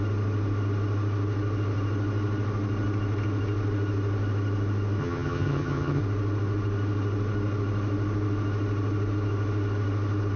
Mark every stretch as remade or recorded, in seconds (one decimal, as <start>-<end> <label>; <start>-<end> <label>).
0.0-5.0 recorded; 5.0-6.0 remade; 6.0-10.4 recorded

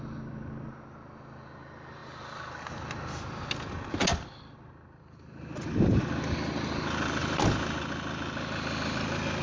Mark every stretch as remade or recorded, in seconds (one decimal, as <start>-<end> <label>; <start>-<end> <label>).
0.0-9.4 recorded

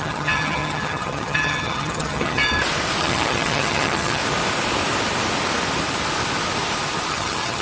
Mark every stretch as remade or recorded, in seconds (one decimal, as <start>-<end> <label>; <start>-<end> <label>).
0.0-2.4 remade; 2.4-3.0 recorded; 3.0-4.2 remade; 4.2-7.1 recorded; 7.1-7.6 remade

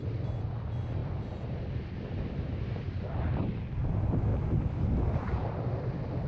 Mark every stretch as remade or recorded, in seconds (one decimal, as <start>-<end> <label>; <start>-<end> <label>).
0.0-6.3 recorded

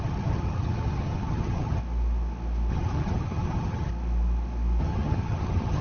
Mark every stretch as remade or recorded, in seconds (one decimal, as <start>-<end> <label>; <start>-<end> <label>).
0.0-1.8 remade; 1.8-2.7 recorded; 2.7-3.9 remade; 3.9-4.8 recorded; 4.8-5.8 remade

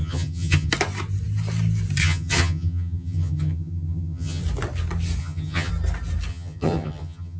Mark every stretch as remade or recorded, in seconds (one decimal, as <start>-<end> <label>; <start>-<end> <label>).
0.0-0.7 remade; 0.7-2.0 recorded; 2.0-4.4 remade; 4.4-5.2 recorded; 5.2-5.7 remade; 5.7-6.3 recorded; 6.3-7.4 remade

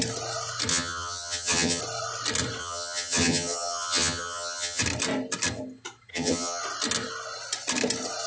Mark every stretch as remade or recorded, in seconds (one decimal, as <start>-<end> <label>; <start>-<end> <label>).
0.0-0.7 recorded; 0.7-1.8 remade; 1.8-2.6 recorded; 2.6-4.8 remade; 4.8-6.1 recorded; 6.1-6.6 remade; 6.6-8.3 recorded